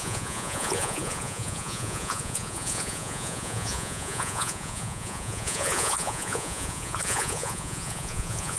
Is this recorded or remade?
remade